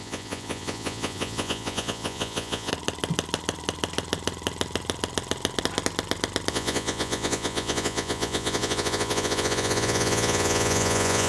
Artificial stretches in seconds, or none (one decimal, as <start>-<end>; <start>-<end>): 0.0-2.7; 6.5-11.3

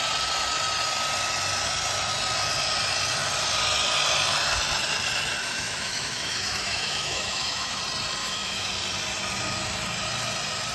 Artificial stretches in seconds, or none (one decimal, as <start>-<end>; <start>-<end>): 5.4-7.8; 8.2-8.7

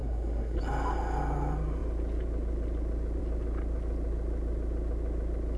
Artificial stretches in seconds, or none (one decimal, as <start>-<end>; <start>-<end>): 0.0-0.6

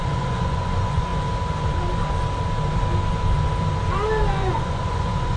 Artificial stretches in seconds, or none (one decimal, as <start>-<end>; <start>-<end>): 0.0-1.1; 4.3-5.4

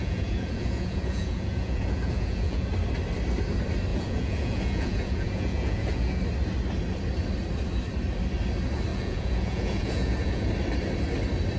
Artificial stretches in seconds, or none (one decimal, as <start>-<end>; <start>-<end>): 0.0-2.7; 3.9-6.2; 8.9-10.5

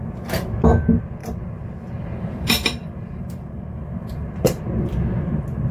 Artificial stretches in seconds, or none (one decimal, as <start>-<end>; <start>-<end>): 1.2-4.6

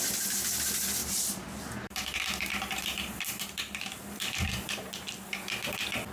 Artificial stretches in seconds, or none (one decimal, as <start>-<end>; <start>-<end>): 1.0-4.7

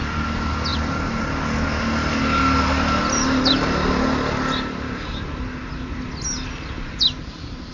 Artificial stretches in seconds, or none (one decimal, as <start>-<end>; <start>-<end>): 0.7-1.2